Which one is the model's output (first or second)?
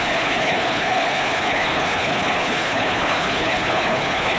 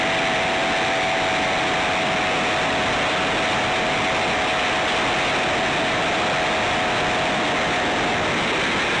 first